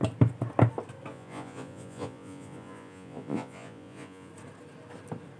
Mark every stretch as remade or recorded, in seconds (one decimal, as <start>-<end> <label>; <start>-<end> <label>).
0.0-1.1 recorded; 1.1-4.3 remade; 4.3-5.4 recorded